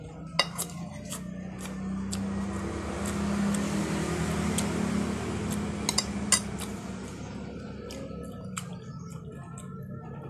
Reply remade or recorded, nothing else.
recorded